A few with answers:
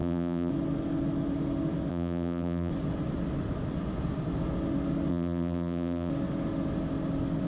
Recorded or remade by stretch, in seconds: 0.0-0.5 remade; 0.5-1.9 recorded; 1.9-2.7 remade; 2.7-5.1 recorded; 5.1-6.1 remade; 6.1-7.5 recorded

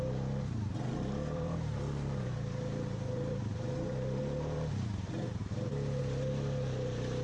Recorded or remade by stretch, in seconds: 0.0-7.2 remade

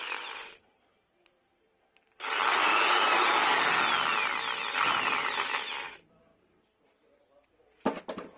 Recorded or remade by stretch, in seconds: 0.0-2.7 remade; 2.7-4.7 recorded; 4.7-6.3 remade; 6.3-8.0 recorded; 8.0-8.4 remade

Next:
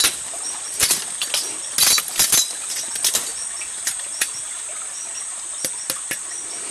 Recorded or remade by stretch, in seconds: 0.0-6.7 recorded

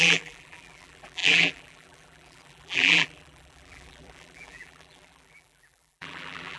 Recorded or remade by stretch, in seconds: 0.0-6.6 remade

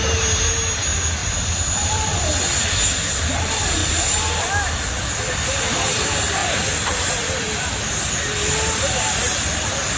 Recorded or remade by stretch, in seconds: 0.0-1.2 recorded; 1.2-2.4 remade; 2.4-3.8 recorded; 3.8-4.7 remade; 4.7-6.4 recorded; 6.4-8.1 remade; 8.1-10.0 recorded